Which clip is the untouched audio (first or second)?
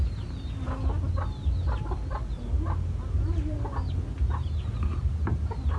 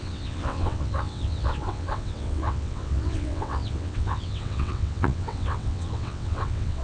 first